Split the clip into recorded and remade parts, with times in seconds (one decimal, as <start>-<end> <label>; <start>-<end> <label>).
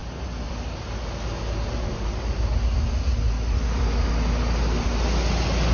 0.0-5.7 recorded